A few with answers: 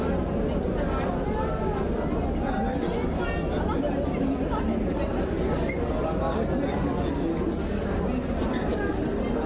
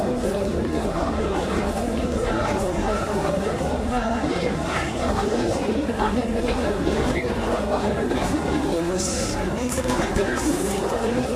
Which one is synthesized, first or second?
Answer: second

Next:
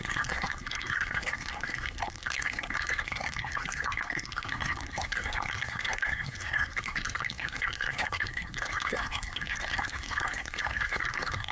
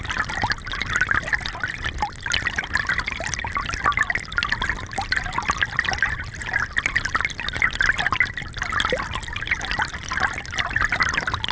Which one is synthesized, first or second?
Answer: first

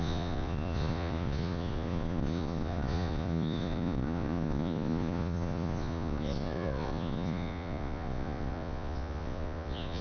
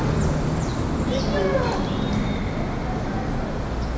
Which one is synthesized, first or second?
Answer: first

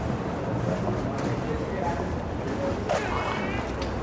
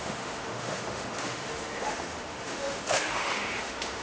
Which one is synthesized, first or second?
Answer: second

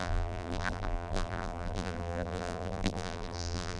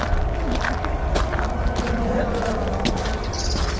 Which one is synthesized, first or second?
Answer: first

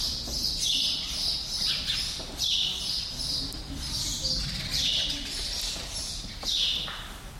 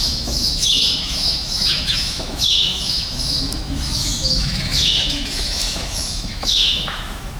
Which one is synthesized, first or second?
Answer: second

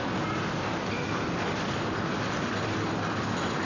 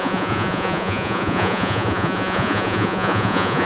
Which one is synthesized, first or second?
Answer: second